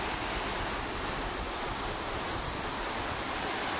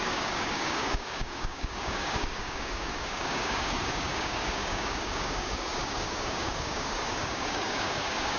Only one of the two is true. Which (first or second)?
first